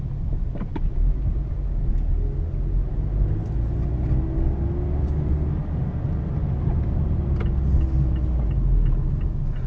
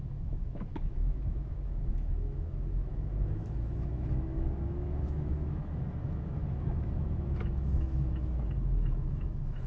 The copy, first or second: second